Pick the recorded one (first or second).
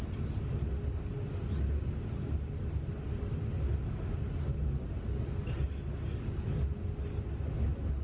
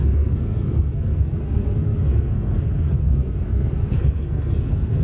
first